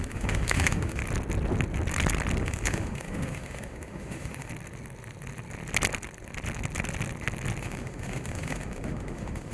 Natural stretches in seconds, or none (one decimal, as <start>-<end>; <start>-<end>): 1.0-2.4; 4.5-7.6